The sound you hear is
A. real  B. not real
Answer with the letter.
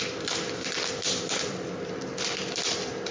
B